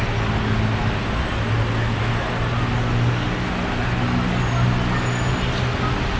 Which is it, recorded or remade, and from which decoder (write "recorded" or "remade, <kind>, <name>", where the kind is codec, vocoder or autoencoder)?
recorded